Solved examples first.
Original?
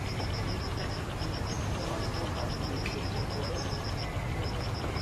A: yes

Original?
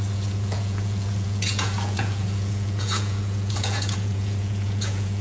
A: no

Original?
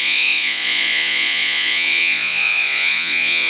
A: no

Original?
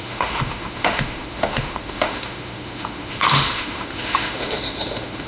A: no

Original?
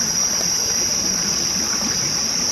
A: yes